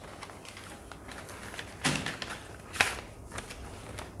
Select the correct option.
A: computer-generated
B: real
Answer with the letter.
B